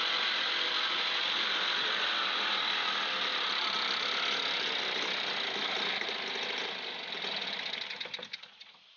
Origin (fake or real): real